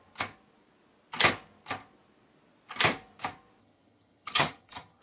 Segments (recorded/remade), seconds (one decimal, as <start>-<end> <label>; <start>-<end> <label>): 0.0-3.6 recorded; 3.6-5.0 remade